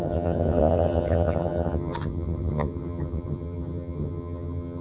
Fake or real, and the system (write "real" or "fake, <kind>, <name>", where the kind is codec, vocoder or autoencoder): fake, vocoder, HiFi-GAN